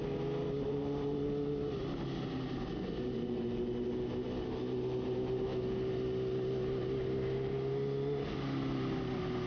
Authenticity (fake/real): real